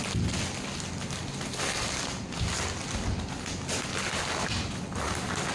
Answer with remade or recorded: recorded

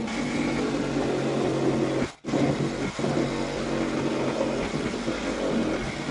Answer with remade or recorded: recorded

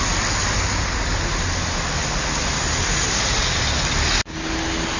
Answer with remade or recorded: recorded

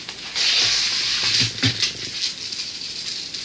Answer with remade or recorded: recorded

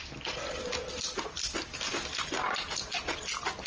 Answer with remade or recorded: recorded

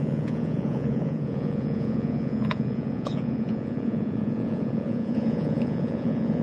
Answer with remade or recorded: remade